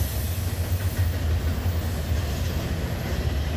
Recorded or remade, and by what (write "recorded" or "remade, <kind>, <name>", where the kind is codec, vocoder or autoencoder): recorded